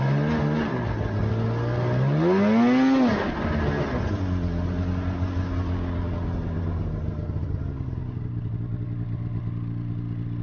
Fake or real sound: real